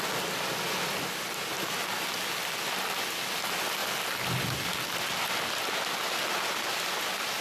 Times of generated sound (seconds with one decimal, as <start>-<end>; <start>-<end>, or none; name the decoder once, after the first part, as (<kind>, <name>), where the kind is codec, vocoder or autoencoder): none